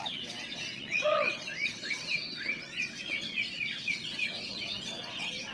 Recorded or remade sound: remade